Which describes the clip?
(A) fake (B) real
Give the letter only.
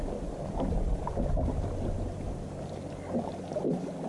B